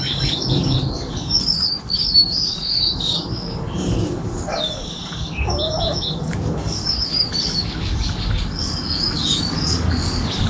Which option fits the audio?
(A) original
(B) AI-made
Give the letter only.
B